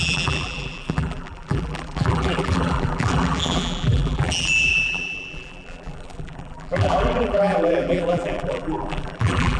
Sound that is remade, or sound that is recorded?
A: remade